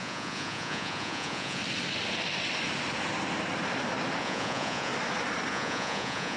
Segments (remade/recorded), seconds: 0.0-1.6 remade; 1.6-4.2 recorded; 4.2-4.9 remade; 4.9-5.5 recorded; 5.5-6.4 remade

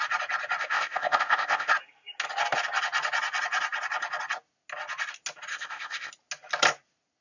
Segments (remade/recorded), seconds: 0.0-0.6 recorded; 0.6-1.7 remade; 1.7-5.5 recorded; 5.5-6.1 remade; 6.1-7.2 recorded

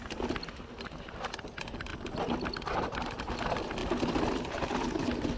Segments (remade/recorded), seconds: 0.0-5.4 recorded

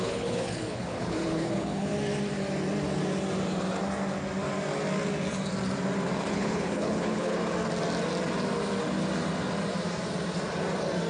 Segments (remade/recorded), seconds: 0.0-1.9 remade; 1.9-6.3 recorded; 6.3-7.4 remade; 7.4-11.1 recorded

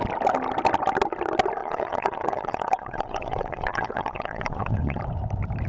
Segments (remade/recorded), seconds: 0.0-1.6 recorded; 1.6-5.0 remade; 5.0-5.7 recorded

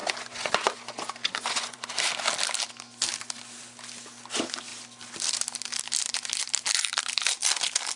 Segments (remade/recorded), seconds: 0.0-1.9 remade; 1.9-8.0 recorded

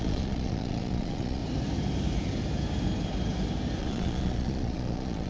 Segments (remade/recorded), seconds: 0.0-1.4 remade; 1.4-3.8 recorded; 3.8-5.3 remade

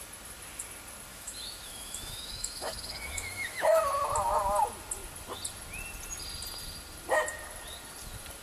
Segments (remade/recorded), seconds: 0.0-1.1 recorded; 1.1-3.8 remade; 3.8-8.4 recorded